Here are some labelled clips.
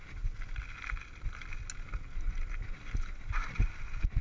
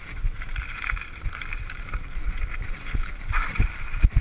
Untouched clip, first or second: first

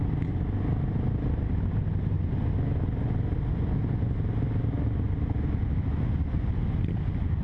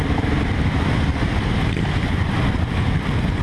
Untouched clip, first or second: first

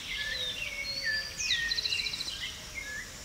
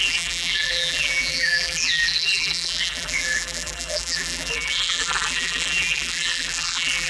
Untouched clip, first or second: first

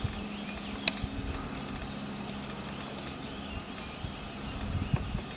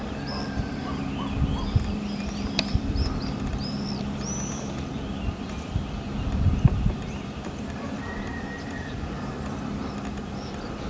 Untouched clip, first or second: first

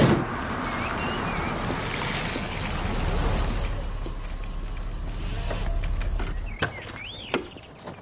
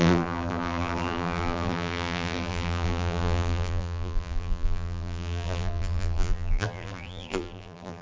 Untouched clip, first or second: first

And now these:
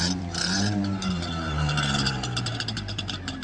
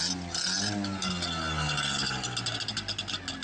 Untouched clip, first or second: second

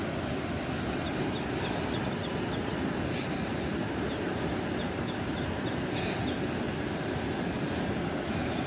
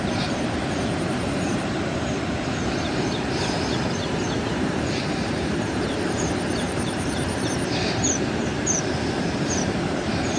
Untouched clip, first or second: first